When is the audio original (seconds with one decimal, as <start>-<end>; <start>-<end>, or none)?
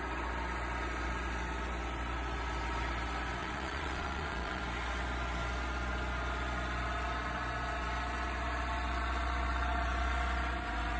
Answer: 0.0-3.4; 4.6-11.0